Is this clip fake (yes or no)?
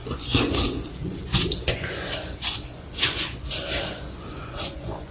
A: yes